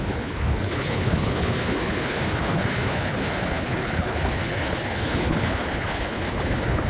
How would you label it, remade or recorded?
remade